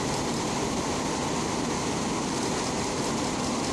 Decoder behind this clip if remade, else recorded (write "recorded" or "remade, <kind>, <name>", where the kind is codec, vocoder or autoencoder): recorded